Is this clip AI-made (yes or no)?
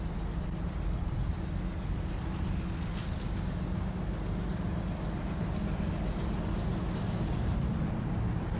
no